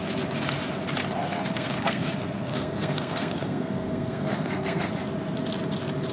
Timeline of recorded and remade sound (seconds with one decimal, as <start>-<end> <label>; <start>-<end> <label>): 0.0-1.2 recorded; 1.2-4.9 remade; 4.9-6.1 recorded